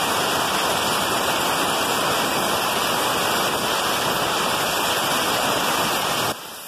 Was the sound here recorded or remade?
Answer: recorded